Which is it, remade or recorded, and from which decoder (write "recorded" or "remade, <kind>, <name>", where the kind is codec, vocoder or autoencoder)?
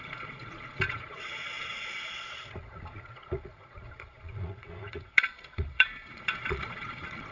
remade, vocoder, Vocos